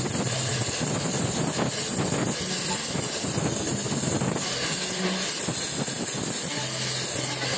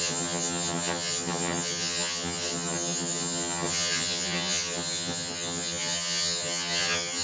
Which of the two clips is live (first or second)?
first